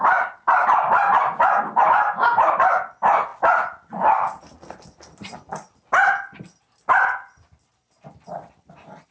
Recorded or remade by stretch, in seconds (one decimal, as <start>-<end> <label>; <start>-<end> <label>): 0.0-9.1 recorded